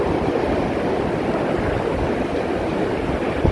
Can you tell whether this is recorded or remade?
recorded